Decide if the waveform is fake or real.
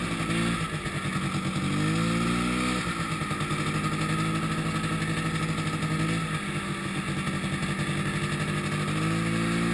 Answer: real